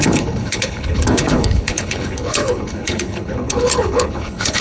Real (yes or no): no